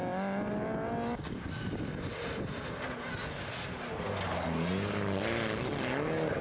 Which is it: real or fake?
real